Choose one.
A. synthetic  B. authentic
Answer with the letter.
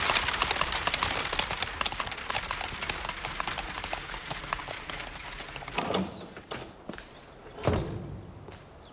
B